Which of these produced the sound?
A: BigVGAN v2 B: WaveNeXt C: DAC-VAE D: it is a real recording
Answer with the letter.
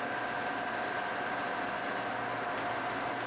D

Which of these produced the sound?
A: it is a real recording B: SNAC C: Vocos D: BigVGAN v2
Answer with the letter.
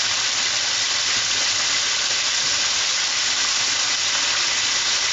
A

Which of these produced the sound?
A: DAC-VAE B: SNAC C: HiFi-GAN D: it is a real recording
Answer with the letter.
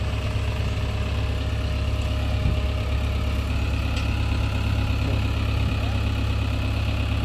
D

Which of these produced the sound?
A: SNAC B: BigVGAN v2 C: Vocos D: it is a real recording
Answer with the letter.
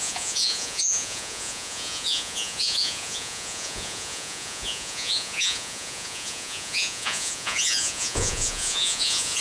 C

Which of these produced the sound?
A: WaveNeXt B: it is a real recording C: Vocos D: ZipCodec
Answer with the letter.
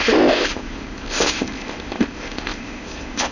D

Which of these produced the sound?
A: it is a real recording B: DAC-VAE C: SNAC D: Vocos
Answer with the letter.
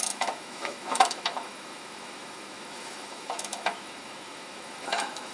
B